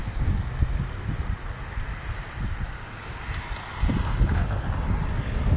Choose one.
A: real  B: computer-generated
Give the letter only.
A